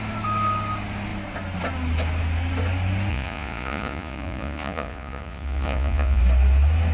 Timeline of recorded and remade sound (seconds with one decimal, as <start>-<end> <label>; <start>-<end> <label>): 0.0-3.1 recorded; 3.1-6.2 remade; 6.2-6.9 recorded